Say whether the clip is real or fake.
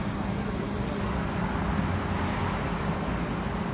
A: real